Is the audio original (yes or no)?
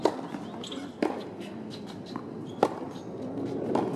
yes